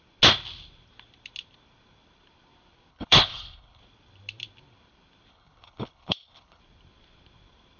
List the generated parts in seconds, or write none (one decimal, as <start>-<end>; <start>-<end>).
2.9-3.8; 5.3-6.6